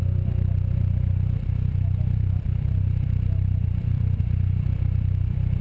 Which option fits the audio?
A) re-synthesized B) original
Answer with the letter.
A